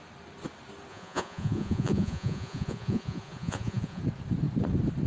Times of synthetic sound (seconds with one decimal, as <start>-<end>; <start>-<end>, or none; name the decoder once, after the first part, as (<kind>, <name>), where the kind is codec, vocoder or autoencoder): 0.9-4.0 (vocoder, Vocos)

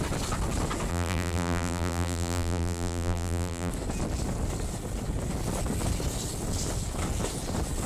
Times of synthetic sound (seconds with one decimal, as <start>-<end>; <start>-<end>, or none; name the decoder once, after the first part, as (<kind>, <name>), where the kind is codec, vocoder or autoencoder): 0.9-3.7 (vocoder, BigVGAN v2)

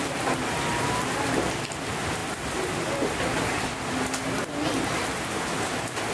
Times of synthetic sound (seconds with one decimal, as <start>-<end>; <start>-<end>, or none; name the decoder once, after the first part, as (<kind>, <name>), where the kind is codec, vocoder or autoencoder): none